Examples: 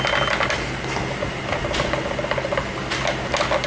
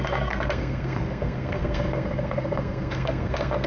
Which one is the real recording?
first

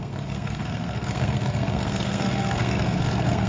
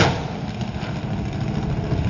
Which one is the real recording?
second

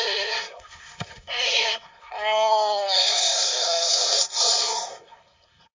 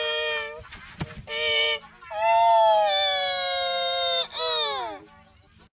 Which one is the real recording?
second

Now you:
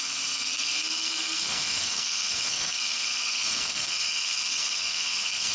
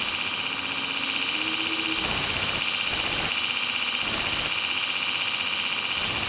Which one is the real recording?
second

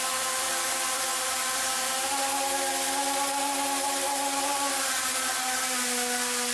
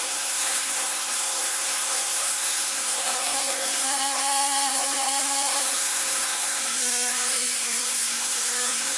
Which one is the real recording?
first